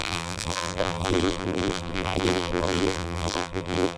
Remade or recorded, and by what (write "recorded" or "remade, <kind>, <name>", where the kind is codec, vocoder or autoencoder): remade, vocoder, BigVGAN v2